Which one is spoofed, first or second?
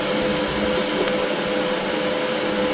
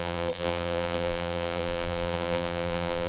second